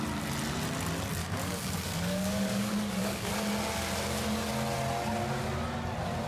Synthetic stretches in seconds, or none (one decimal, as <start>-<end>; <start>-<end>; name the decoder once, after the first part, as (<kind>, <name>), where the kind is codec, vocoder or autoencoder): 1.2-3.3 (codec, DAC)